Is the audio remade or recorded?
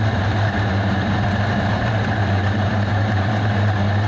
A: remade